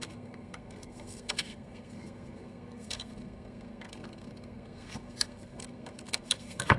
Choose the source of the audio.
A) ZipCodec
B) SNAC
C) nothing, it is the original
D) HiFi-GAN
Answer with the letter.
B